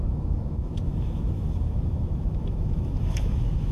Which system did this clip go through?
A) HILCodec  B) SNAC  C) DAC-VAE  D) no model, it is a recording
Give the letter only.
C